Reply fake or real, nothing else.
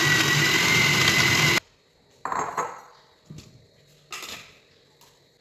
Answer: real